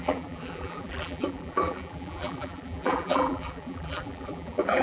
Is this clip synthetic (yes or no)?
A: yes